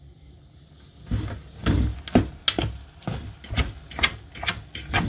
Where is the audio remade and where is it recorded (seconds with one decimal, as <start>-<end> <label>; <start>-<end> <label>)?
0.0-5.1 recorded